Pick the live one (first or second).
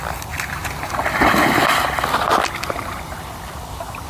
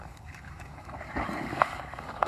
first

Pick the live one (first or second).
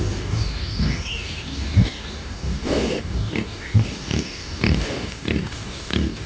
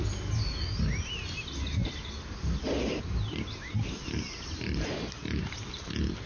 second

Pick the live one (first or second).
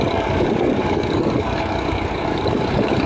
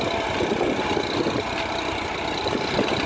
second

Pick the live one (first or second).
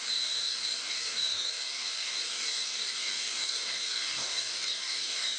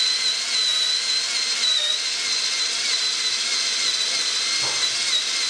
second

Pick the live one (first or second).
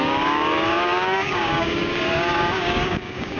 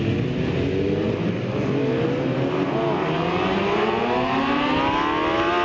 second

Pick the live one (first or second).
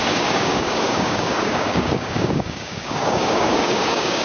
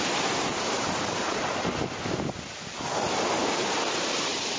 second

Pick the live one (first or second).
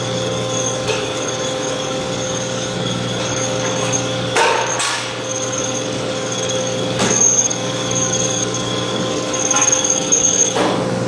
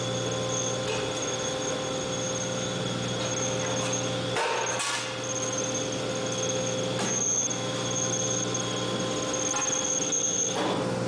second